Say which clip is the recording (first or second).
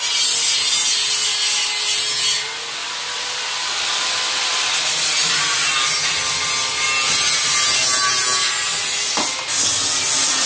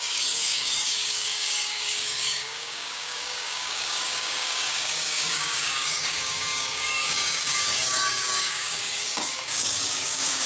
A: first